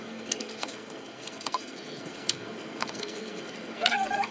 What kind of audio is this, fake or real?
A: fake